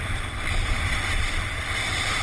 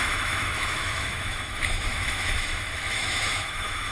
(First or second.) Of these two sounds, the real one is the first